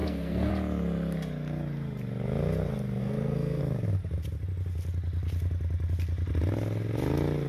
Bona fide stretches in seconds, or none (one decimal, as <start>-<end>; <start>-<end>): 0.5-3.0; 3.6-7.5